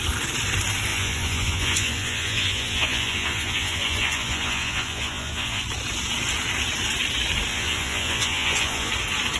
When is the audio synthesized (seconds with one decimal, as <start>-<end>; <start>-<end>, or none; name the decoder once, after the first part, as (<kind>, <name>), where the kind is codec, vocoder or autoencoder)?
0.9-5.6 (vocoder, Vocos); 7.5-8.9